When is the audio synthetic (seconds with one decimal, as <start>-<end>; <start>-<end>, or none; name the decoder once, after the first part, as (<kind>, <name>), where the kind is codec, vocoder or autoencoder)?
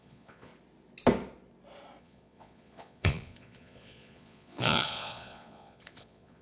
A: 0.0-0.5 (vocoder, Vocos); 2.0-6.4